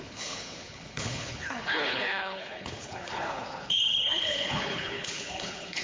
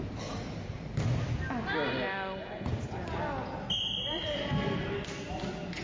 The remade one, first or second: first